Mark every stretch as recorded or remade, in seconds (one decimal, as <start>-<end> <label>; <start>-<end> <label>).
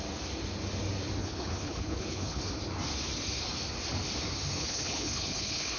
0.0-1.2 recorded; 1.2-2.4 remade; 2.4-4.6 recorded; 4.6-5.8 remade